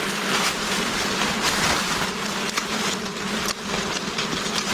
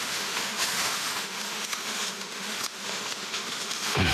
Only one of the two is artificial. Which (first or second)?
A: second